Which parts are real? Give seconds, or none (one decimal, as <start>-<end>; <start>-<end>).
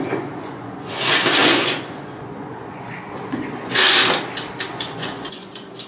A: 4.0-4.7